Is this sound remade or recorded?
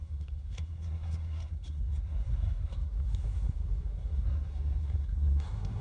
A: remade